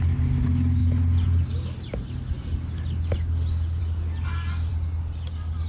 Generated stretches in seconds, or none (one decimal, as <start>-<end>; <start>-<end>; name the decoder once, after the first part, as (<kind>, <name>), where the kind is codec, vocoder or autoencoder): none